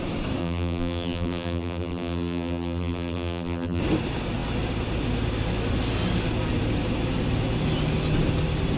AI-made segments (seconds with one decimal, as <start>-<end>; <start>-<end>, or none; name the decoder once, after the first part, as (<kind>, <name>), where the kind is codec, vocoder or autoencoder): 0.4-3.8 (vocoder, BigVGAN v2)

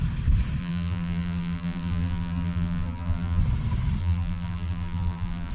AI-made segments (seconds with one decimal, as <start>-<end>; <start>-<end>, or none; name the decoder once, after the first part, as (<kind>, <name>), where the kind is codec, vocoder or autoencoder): 0.6-3.4 (vocoder, BigVGAN v2); 4.0-5.5

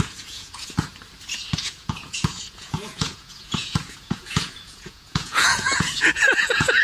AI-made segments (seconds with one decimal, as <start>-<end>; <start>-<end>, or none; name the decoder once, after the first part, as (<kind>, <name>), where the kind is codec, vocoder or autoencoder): 0.0-0.9 (vocoder, Vocos); 1.6-6.8